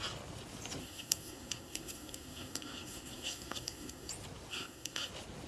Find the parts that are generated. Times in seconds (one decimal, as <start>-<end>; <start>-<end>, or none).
0.8-4.1; 4.5-5.1